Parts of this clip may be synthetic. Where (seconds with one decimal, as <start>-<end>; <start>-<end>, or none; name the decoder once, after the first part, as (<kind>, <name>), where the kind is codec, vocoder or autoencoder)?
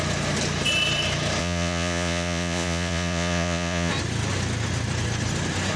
1.4-3.9 (vocoder, Vocos)